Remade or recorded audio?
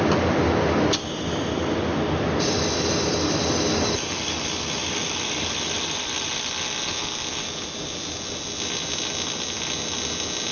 recorded